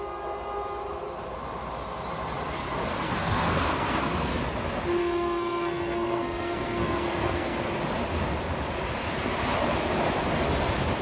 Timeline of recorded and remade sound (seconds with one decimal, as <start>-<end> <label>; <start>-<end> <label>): 0.0-2.9 recorded; 2.9-4.4 remade; 4.4-5.0 recorded; 5.0-7.7 remade; 7.7-11.0 recorded